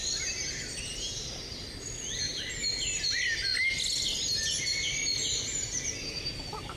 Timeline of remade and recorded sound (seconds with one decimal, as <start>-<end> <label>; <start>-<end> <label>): 0.0-6.8 recorded